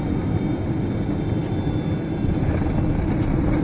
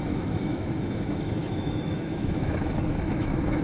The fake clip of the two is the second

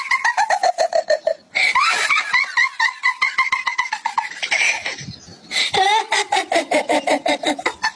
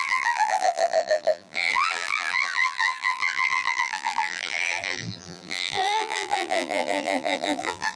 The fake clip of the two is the second